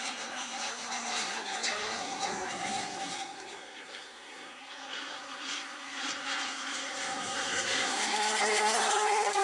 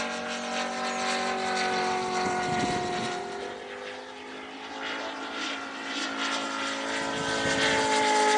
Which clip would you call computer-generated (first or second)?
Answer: first